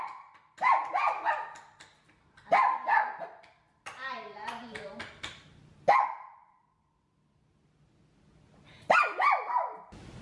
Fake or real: real